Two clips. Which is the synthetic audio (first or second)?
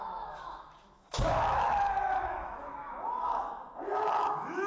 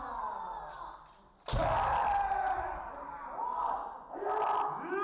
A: first